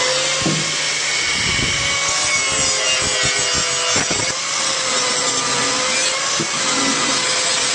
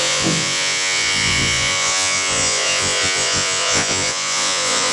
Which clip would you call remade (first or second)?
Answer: second